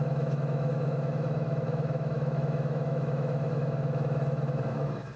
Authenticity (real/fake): fake